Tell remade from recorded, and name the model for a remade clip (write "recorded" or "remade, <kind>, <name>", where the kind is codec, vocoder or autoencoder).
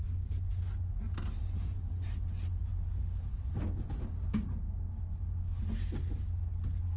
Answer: recorded